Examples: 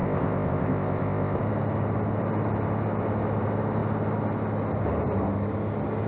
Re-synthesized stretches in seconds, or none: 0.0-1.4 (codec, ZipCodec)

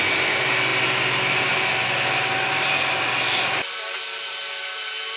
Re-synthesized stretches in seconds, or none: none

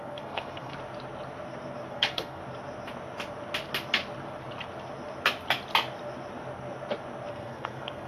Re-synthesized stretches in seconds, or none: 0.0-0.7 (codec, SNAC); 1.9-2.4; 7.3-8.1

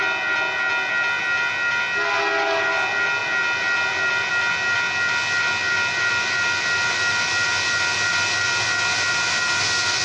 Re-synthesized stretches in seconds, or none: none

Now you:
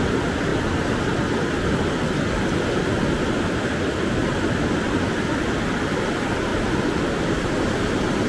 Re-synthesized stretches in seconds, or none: none

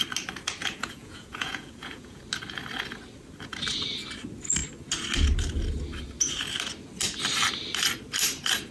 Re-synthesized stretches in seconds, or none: 0.6-2.2 (vocoder, Vocos)

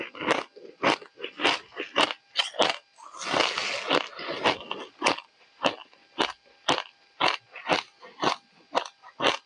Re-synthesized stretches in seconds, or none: 6.0-7.4 (vocoder, BigVGAN v2)